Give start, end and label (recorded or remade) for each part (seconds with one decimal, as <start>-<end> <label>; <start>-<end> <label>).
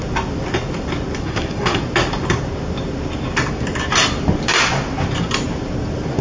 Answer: 0.0-1.2 recorded; 1.2-1.8 remade; 1.8-6.2 recorded